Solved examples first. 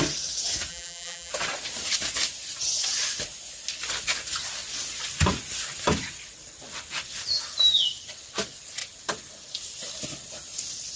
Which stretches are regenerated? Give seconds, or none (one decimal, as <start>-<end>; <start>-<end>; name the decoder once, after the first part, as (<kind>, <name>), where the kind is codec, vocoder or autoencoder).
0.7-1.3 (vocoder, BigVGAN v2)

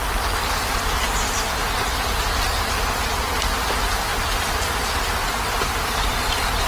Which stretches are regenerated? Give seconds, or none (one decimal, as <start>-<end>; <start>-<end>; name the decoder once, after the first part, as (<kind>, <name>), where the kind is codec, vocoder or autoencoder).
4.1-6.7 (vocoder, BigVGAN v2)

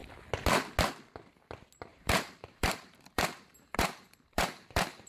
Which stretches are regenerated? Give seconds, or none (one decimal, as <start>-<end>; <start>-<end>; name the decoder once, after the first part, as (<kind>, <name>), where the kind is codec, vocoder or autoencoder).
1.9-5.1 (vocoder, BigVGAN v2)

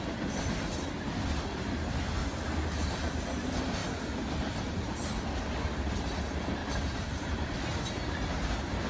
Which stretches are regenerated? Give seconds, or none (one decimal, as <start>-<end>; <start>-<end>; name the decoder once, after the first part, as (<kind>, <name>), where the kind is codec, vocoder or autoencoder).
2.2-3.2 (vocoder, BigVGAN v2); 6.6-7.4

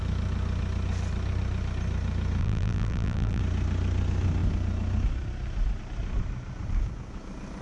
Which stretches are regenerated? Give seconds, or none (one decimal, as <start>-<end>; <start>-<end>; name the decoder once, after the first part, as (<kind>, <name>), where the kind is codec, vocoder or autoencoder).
2.4-3.4 (vocoder, BigVGAN v2)

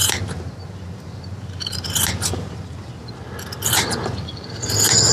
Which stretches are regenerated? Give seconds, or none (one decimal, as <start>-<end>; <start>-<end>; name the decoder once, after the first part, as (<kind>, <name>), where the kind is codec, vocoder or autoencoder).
0.0-3.1 (vocoder, BigVGAN v2)

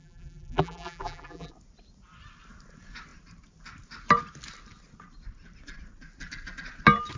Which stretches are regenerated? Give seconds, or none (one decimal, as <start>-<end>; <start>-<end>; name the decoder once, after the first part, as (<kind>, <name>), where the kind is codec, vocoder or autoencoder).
0.0-1.5 (vocoder, BigVGAN v2)